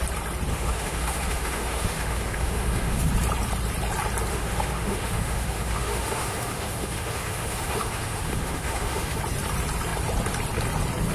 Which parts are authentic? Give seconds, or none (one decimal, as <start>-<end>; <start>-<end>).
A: 0.0-0.5; 3.1-4.3; 9.2-11.1